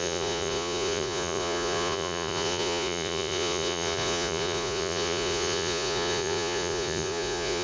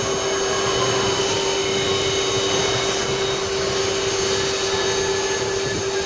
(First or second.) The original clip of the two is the second